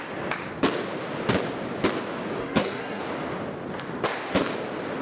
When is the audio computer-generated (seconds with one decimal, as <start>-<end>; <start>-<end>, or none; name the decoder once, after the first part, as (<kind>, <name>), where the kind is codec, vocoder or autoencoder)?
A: 2.4-3.0 (codec, SNAC)